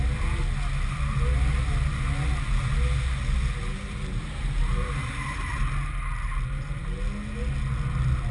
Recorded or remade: recorded